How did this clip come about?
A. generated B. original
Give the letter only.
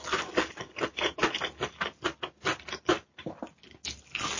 B